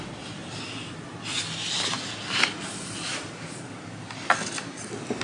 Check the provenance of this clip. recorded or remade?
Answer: recorded